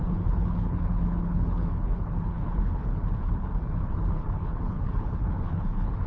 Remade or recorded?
remade